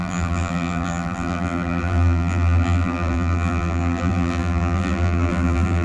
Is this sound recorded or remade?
remade